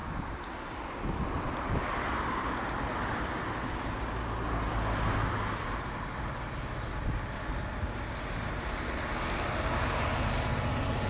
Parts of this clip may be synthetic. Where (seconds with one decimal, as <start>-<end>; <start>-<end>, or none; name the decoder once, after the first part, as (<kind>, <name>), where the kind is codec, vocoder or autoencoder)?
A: none